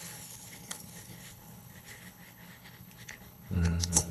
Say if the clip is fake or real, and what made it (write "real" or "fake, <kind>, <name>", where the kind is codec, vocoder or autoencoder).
fake, codec, HILCodec